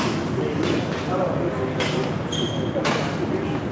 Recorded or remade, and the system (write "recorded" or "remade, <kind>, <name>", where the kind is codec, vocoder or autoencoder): recorded